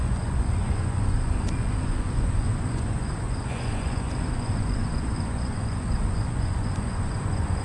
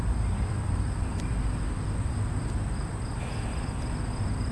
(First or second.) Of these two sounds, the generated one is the first